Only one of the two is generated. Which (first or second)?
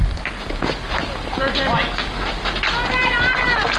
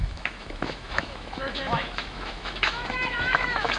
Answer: second